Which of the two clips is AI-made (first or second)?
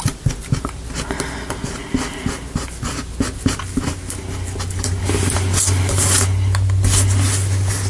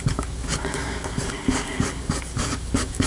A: second